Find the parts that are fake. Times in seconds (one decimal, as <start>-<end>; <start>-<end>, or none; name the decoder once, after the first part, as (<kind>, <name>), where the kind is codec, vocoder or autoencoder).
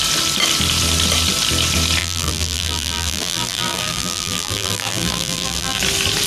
2.0-5.8 (vocoder, BigVGAN v2)